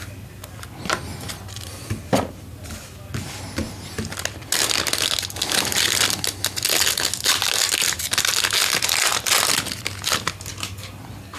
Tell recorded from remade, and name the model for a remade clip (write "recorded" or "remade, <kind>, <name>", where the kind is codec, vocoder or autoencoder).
recorded